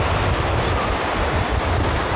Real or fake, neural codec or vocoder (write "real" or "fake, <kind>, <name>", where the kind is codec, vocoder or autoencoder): real